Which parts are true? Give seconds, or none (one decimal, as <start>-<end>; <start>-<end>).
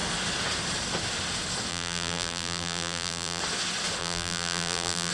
0.0-1.7; 3.4-4.0